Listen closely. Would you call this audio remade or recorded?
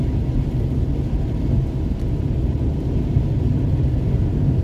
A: recorded